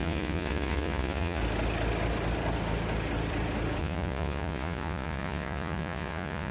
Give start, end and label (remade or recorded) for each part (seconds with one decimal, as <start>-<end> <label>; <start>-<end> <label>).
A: 0.0-1.4 remade; 1.4-3.8 recorded; 3.8-6.5 remade